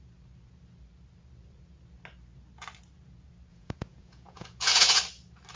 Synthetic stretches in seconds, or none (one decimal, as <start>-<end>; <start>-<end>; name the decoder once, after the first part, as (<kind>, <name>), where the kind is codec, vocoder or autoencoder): 3.5-5.0 (vocoder, Vocos)